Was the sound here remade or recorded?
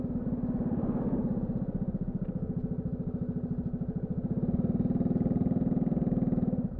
recorded